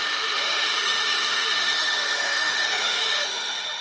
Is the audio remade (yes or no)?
yes